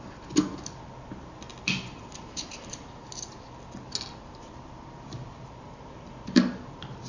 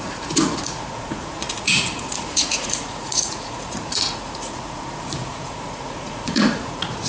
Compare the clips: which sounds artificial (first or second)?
second